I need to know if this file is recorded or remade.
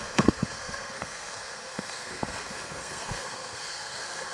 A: remade